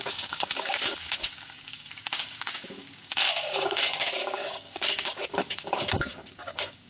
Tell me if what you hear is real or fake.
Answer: fake